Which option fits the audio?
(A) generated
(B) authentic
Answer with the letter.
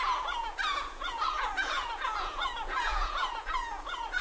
A